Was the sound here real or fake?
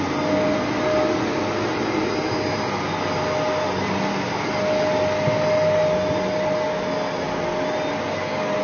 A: real